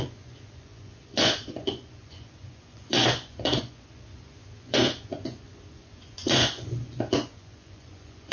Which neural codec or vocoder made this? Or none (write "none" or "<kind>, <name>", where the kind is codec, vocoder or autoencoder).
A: vocoder, Vocos